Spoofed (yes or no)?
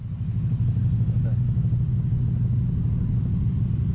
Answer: no